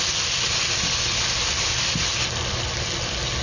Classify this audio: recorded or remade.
recorded